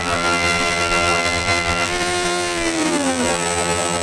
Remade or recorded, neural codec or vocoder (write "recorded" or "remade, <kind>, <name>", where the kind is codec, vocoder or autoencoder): remade, vocoder, BigVGAN v2